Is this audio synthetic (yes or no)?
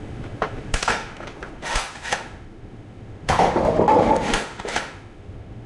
yes